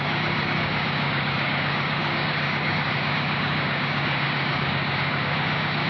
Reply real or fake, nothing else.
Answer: fake